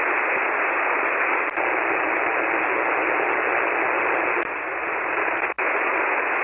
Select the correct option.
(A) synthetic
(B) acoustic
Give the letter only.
B